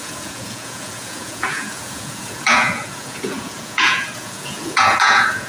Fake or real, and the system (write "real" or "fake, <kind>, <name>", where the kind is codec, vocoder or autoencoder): fake, vocoder, Vocos